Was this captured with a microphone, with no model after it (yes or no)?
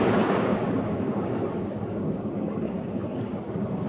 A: no